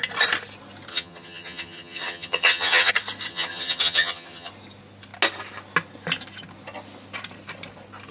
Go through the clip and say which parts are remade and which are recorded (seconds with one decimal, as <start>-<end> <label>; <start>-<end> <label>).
0.0-0.9 recorded; 0.9-2.9 remade; 2.9-3.3 recorded; 3.3-4.5 remade; 4.5-8.1 recorded